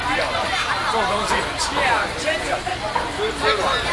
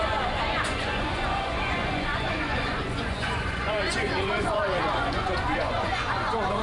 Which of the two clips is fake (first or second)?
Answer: second